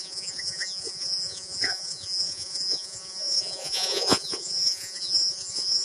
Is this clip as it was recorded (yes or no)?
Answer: no